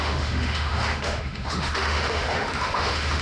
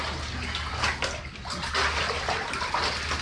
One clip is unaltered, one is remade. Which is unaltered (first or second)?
second